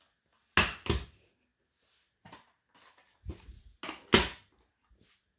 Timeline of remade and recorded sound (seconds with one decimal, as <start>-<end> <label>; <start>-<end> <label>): 0.0-5.4 recorded